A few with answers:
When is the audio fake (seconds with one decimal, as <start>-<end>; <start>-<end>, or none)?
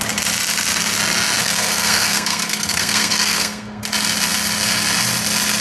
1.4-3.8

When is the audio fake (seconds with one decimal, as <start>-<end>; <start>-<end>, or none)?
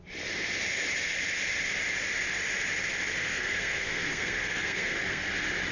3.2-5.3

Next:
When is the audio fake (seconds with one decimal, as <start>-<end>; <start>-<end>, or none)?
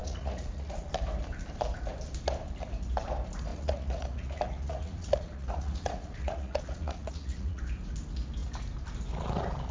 0.0-0.9; 3.5-7.6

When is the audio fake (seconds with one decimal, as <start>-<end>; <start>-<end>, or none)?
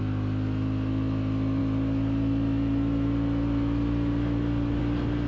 none